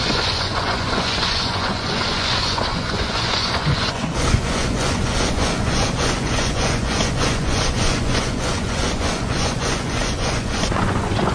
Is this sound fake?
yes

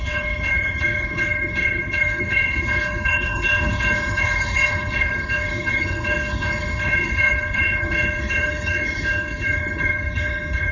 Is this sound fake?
yes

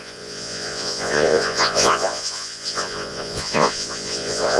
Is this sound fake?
yes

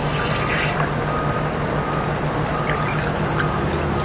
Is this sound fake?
no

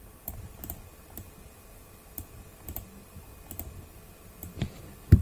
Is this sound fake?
no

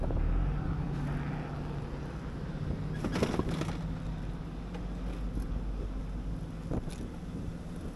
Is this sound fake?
no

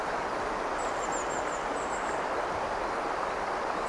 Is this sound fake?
no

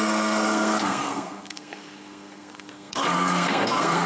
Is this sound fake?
yes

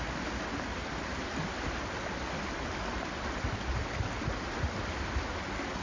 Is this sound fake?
no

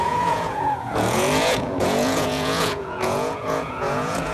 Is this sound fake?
yes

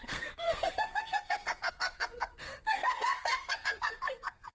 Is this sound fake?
yes